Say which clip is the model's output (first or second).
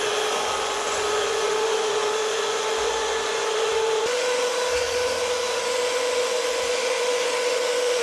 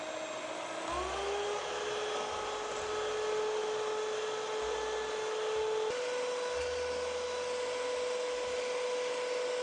first